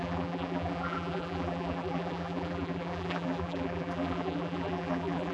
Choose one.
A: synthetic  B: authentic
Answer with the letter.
A